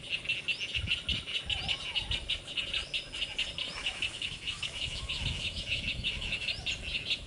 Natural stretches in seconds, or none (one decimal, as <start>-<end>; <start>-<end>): 0.0-3.8; 6.5-7.3